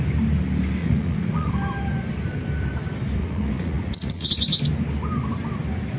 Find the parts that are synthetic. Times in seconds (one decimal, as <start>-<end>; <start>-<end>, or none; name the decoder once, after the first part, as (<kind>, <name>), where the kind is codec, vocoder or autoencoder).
0.8-1.5 (vocoder, Vocos); 3.2-4.3